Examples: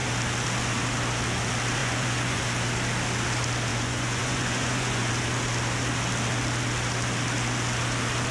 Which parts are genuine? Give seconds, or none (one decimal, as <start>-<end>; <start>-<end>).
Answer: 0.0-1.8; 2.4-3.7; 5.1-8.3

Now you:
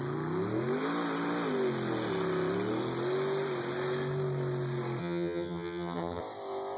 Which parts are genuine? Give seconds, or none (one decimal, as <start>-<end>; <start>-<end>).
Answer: 0.0-5.0; 6.2-6.8

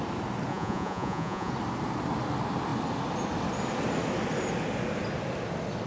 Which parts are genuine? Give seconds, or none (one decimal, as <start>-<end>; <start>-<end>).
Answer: 0.0-0.5; 1.5-5.9

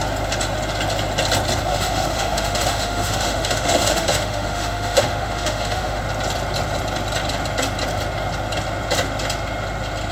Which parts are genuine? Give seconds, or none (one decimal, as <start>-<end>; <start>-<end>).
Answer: 0.0-1.7; 6.0-10.1

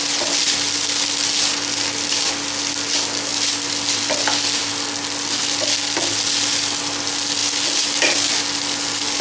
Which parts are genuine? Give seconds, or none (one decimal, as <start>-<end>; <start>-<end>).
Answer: 0.0-9.2

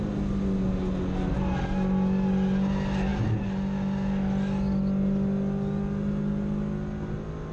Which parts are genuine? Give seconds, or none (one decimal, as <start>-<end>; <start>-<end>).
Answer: 0.0-7.5

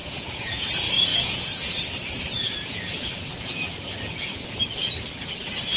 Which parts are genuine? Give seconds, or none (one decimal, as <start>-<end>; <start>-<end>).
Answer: 0.6-1.1; 4.6-5.8

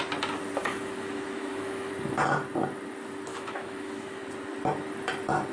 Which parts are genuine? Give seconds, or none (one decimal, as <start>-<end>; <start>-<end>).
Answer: 0.0-0.6; 1.9-3.3; 4.2-5.5